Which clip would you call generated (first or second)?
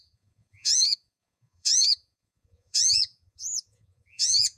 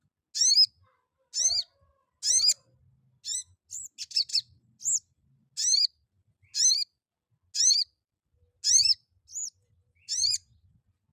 first